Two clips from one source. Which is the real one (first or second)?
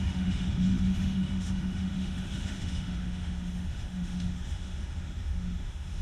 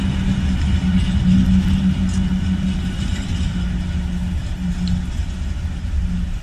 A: second